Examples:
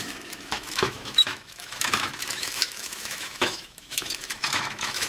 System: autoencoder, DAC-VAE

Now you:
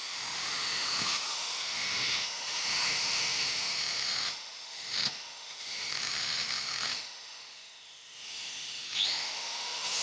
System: autoencoder, DAC-VAE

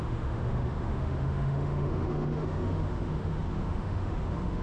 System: autoencoder, DAC-VAE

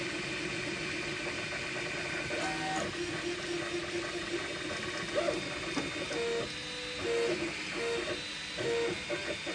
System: none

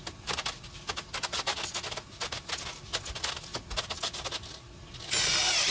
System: none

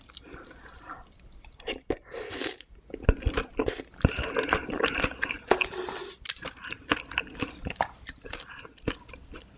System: none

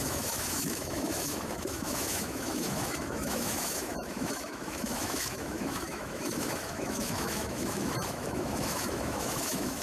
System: autoencoder, DAC-VAE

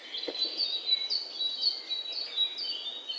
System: none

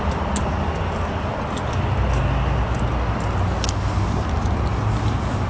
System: none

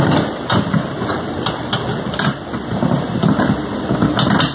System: none